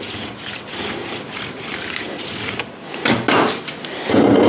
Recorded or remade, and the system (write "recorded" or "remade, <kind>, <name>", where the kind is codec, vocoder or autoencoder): recorded